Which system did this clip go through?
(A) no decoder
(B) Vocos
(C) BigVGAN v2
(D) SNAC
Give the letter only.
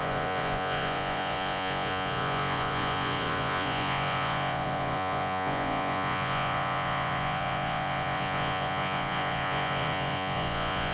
B